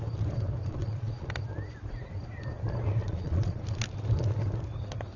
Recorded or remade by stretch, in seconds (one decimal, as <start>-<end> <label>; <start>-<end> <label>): 0.0-0.6 recorded; 0.6-1.3 remade; 1.3-3.0 recorded; 3.0-3.6 remade; 3.6-5.2 recorded